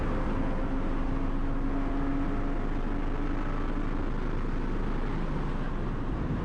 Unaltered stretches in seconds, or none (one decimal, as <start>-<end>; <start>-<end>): 0.0-6.4